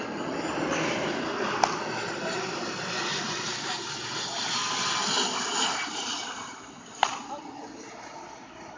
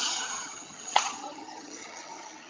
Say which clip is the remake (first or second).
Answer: second